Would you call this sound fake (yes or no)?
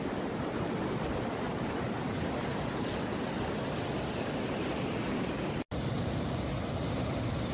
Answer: no